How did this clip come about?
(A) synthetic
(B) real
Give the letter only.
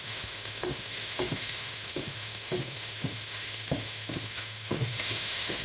A